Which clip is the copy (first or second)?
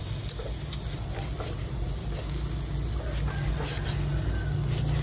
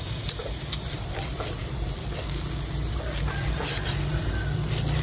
second